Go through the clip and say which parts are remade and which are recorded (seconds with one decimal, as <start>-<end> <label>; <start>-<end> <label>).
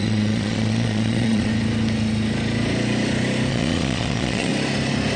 0.0-1.5 remade; 1.5-3.5 recorded; 3.5-4.5 remade; 4.5-5.2 recorded